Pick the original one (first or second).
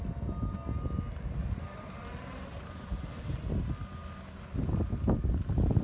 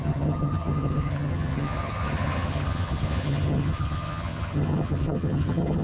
first